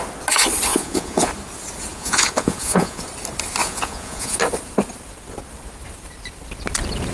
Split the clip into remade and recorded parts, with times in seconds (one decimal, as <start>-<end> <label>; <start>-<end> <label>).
0.0-0.7 recorded; 0.7-1.3 remade; 1.3-1.9 recorded; 1.9-3.0 remade; 3.0-3.6 recorded; 3.6-4.4 remade; 4.4-7.1 recorded